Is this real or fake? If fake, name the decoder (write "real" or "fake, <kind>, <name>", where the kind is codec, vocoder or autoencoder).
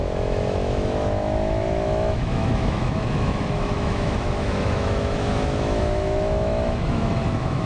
fake, autoencoder, DAC-VAE